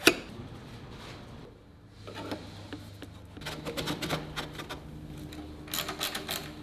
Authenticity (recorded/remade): recorded